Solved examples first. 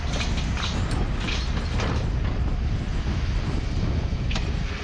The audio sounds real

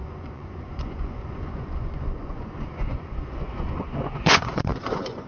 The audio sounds fake